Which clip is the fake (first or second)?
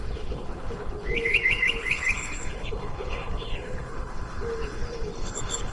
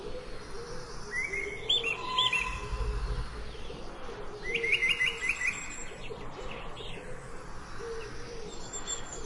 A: first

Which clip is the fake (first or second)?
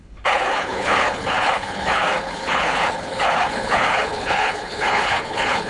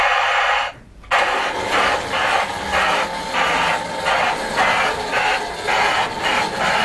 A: first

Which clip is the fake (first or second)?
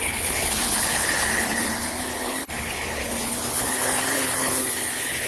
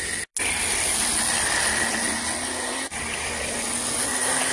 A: first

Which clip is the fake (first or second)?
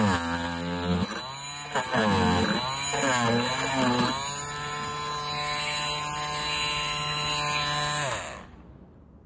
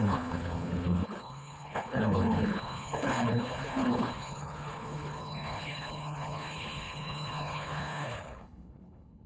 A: second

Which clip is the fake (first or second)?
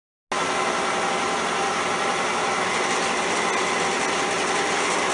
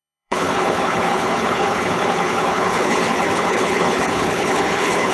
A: second